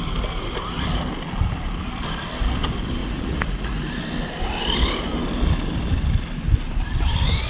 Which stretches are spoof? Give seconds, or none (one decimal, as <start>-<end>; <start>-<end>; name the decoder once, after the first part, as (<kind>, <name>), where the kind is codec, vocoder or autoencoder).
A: 3.0-3.9 (vocoder, Vocos)